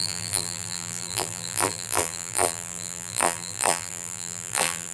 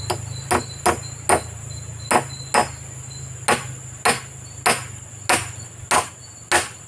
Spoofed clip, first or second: first